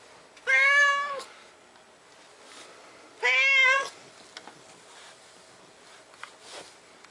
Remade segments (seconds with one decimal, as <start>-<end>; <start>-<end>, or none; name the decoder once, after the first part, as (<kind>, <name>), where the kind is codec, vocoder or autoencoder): none